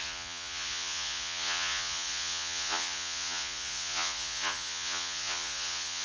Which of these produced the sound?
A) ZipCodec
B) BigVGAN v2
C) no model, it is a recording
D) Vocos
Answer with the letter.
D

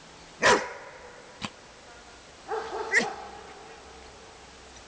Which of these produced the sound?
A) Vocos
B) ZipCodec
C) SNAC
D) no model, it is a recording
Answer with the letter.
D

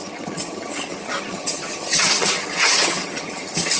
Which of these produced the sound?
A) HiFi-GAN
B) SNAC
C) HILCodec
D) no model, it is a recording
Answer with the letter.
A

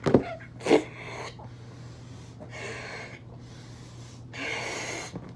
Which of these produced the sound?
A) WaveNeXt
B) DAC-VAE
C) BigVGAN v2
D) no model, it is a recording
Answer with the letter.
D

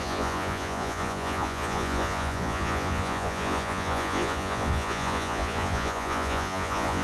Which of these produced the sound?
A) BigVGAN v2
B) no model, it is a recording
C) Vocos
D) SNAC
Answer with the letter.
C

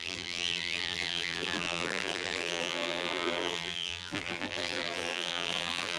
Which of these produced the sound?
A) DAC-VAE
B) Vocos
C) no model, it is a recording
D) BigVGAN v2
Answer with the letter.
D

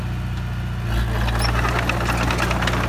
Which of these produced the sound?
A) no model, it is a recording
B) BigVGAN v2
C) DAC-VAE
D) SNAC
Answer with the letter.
A